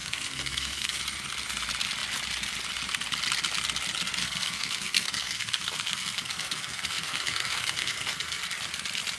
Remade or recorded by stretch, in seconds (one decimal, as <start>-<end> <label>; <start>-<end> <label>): 0.0-1.0 remade; 1.0-4.2 recorded; 4.2-8.4 remade; 8.4-9.2 recorded